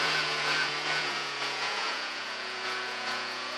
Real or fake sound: fake